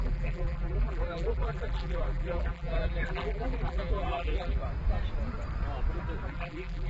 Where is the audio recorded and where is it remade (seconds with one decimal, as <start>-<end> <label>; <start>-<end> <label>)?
0.0-4.6 remade; 4.6-6.3 recorded; 6.3-6.9 remade